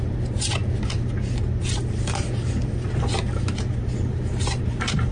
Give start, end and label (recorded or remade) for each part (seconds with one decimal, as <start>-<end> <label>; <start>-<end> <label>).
0.0-0.6 remade; 0.6-3.7 recorded; 3.7-5.1 remade